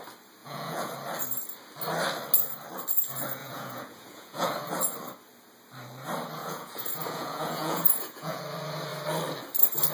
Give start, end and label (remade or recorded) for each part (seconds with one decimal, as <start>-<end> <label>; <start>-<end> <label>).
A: 0.0-0.4 recorded; 0.4-0.9 remade; 0.9-3.4 recorded; 3.4-4.5 remade; 4.5-6.4 recorded; 6.4-8.4 remade; 8.4-9.9 recorded